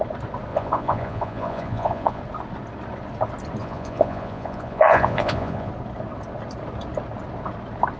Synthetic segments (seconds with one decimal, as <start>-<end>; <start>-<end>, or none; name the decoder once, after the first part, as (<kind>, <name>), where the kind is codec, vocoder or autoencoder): 0.5-2.2 (vocoder, Vocos); 3.6-5.7